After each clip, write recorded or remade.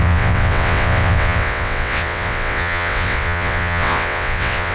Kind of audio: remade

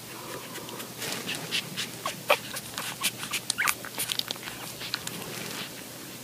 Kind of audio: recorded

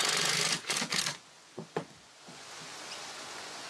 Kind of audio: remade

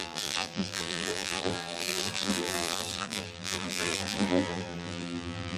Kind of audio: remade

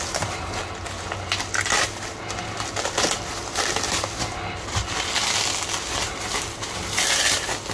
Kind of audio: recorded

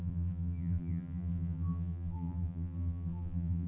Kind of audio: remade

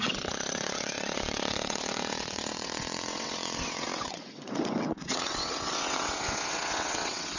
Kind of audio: remade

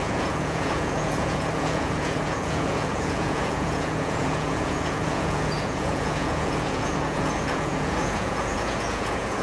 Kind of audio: remade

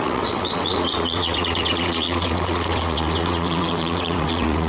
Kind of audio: remade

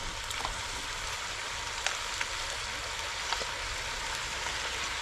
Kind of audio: recorded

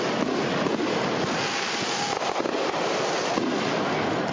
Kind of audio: recorded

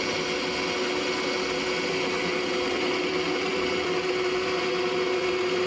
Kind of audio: recorded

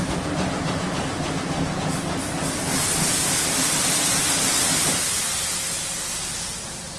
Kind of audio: recorded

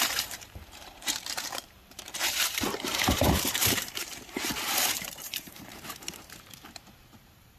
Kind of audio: remade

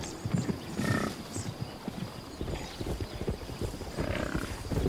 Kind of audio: remade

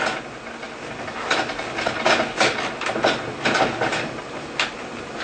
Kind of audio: recorded